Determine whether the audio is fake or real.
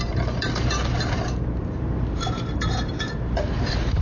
fake